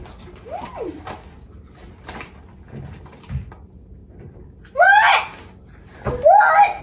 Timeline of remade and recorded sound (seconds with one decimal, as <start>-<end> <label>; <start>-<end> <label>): 0.0-6.8 recorded